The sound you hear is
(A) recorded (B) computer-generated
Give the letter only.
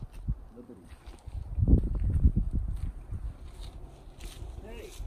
A